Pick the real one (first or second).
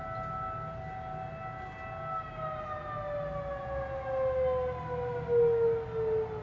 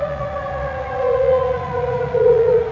first